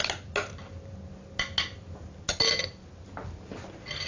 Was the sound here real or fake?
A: real